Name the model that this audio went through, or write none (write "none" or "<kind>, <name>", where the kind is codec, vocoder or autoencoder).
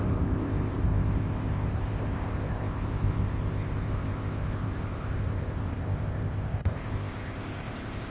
codec, ZipCodec